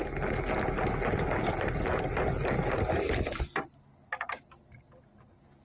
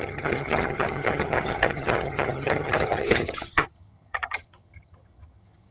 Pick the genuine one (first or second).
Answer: first